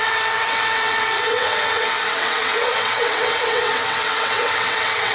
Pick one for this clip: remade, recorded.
remade